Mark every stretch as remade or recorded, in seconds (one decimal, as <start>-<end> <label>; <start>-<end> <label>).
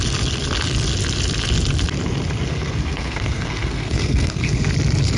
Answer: 0.0-2.5 recorded; 2.5-4.7 remade; 4.7-5.2 recorded